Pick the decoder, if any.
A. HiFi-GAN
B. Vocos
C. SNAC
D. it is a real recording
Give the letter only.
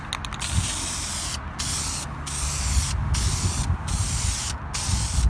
D